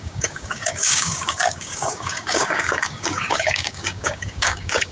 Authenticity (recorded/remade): remade